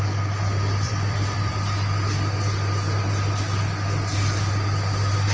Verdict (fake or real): fake